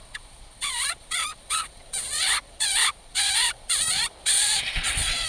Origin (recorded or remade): remade